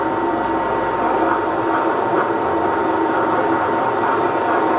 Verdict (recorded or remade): recorded